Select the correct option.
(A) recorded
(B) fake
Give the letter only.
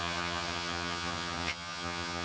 B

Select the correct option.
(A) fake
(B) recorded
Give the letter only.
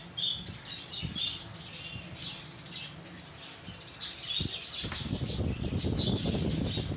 B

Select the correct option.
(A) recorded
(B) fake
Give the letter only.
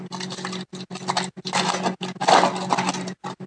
A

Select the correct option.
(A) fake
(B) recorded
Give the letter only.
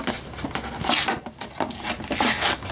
B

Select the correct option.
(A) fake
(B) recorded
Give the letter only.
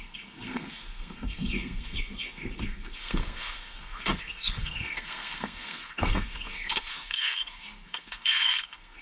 A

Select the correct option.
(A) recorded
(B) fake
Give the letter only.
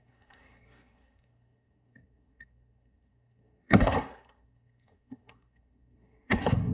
B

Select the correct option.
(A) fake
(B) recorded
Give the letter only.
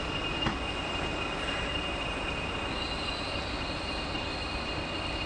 B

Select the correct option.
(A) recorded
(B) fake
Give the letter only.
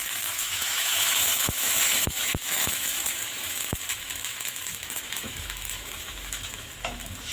B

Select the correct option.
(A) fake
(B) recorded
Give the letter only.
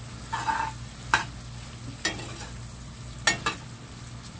B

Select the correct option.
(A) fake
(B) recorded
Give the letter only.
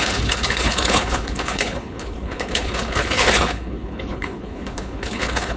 A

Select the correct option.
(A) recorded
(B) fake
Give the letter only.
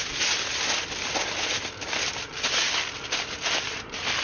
A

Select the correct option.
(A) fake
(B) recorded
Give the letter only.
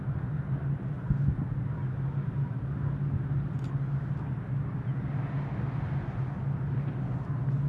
B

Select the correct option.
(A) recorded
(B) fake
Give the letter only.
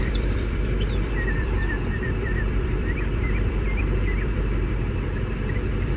B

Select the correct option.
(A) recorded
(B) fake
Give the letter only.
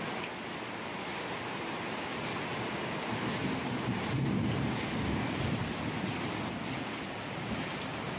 A